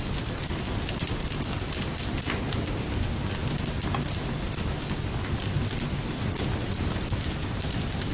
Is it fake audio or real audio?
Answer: real